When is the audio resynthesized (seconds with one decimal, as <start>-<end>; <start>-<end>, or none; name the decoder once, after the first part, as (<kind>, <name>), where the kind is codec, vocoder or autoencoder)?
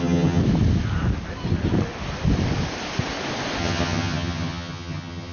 0.0-0.4 (vocoder, HiFi-GAN); 3.6-5.3